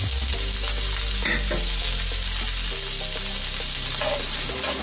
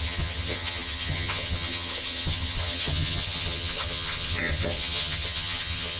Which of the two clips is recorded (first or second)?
first